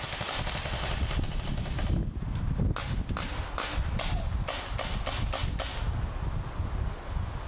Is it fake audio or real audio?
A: real